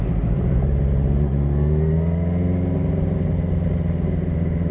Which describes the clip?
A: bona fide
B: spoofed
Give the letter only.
A